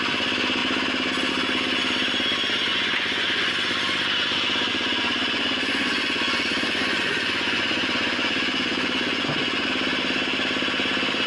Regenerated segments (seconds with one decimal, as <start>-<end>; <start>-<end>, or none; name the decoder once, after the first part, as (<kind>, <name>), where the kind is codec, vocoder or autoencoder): 2.7-3.5 (vocoder, Vocos); 4.7-9.7